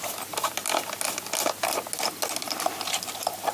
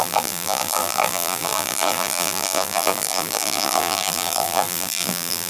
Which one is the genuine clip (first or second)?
first